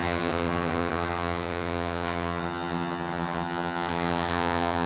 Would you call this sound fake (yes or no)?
yes